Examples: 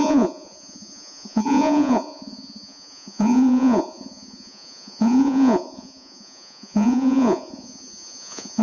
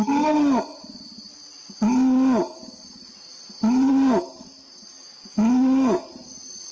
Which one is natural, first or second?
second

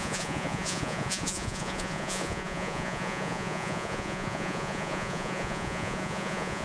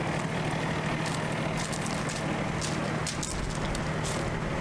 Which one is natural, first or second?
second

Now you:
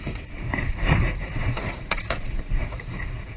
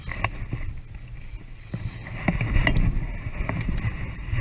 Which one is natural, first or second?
second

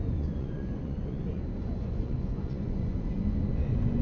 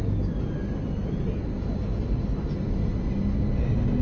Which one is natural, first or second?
second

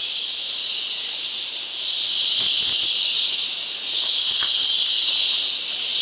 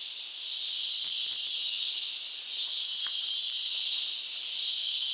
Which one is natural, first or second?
second